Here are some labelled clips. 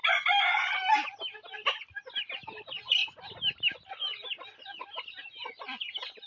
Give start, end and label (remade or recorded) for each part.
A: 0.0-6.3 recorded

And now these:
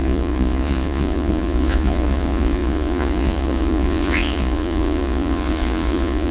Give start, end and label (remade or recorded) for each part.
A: 0.0-6.3 remade

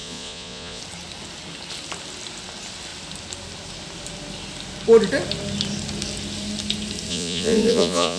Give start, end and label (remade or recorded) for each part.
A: 0.0-0.8 remade; 0.8-7.1 recorded; 7.1-8.2 remade

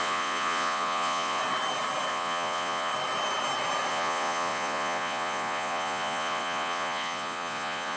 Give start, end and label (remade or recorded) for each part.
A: 0.0-1.4 remade; 1.4-2.1 recorded; 2.1-2.9 remade; 2.9-3.9 recorded; 3.9-8.0 remade

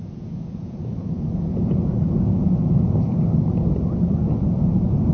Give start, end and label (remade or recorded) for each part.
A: 0.0-3.1 remade; 3.1-4.2 recorded; 4.2-5.1 remade

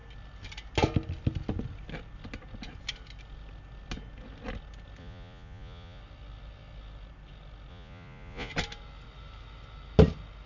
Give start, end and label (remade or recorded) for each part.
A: 0.0-5.0 recorded; 5.0-6.0 remade; 6.0-7.7 recorded; 7.7-8.5 remade; 8.5-10.5 recorded